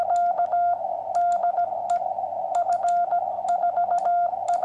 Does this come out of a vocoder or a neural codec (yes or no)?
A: no